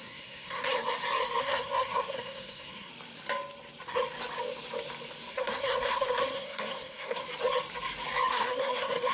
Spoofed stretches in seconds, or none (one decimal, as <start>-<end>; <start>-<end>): 0.0-0.7; 1.4-2.9; 5.3-7.2; 8.3-9.1